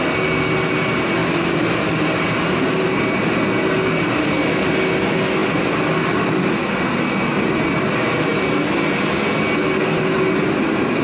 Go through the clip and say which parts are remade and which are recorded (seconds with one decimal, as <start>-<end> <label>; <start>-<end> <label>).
0.0-11.0 recorded